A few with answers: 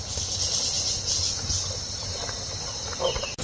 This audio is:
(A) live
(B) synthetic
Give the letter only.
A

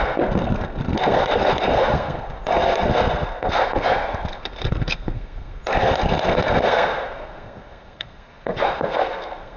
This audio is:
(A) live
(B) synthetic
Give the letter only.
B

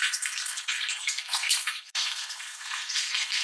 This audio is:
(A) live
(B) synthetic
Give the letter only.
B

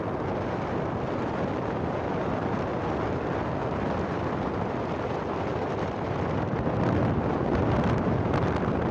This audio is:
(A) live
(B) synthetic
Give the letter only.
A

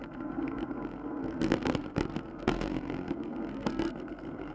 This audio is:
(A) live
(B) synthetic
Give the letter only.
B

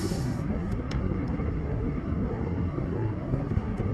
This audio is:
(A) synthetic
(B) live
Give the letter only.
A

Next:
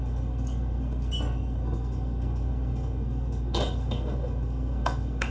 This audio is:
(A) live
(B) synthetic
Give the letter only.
B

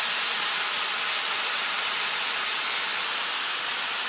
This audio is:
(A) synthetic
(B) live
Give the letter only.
B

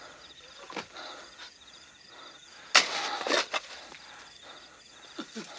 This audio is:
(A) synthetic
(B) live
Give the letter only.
B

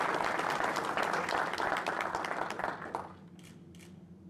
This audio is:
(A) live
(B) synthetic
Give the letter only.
A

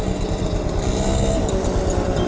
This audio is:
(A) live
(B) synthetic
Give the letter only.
A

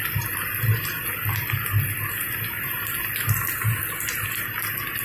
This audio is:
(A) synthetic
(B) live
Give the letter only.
B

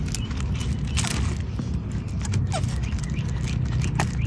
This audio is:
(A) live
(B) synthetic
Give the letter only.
A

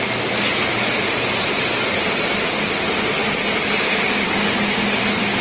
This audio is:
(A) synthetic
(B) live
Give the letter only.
B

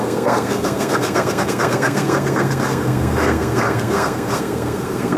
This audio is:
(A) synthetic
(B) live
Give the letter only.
A